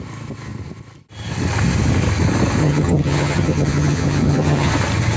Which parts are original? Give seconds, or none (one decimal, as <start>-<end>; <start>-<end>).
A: 0.0-2.6; 4.7-5.2

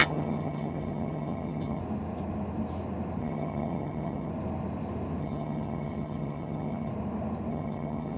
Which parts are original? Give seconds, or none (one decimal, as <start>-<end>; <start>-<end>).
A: 1.8-3.2; 4.3-5.2; 6.9-7.5

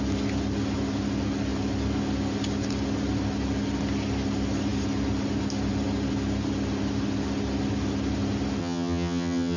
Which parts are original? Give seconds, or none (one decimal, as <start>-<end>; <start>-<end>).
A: 0.0-8.6

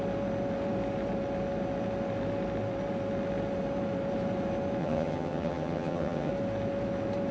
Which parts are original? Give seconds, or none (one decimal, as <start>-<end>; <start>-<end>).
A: 0.0-4.8; 6.3-7.3